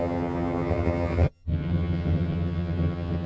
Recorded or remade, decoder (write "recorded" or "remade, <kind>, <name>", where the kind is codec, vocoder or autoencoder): remade, vocoder, HiFi-GAN